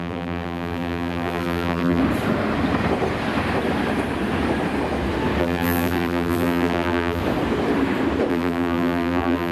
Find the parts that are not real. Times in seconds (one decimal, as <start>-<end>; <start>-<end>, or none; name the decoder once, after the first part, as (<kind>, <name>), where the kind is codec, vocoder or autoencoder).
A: 0.0-2.0 (vocoder, BigVGAN v2); 5.4-7.2; 8.3-9.5